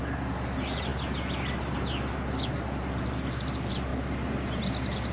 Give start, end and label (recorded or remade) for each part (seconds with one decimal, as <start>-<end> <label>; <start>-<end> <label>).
0.0-5.1 recorded